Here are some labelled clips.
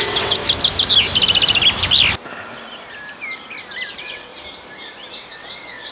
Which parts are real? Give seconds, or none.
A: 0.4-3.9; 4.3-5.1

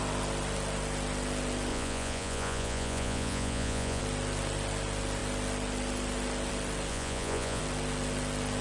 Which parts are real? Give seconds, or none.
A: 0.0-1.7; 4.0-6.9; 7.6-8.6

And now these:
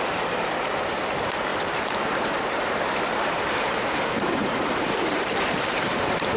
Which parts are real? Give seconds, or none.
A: none

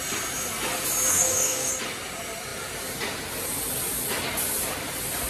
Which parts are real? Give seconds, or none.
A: 0.0-1.1; 1.7-5.3

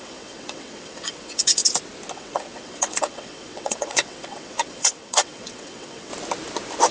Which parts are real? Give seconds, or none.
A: 1.6-2.1; 6.1-6.9

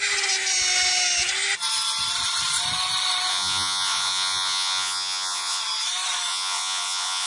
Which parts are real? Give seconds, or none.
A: 0.0-3.3; 5.6-6.3

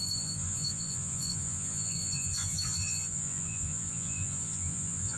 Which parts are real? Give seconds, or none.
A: none